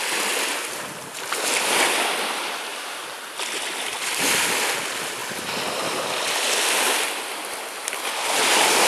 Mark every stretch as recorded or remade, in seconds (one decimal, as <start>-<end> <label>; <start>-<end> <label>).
0.0-2.7 recorded; 2.7-3.2 remade; 3.2-8.9 recorded